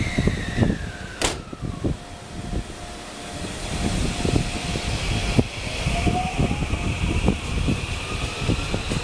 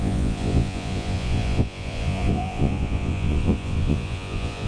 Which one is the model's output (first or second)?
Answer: second